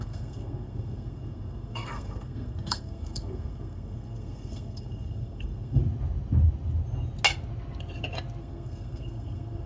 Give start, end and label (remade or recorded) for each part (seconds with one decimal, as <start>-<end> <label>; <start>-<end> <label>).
0.0-5.8 remade; 5.8-8.4 recorded; 8.4-9.7 remade